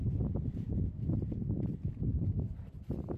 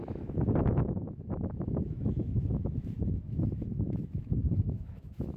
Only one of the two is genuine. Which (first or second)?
first